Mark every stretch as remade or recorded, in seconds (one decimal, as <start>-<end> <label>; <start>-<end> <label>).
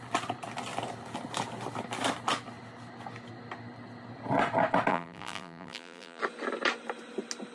0.0-4.9 recorded; 4.9-6.2 remade; 6.2-7.5 recorded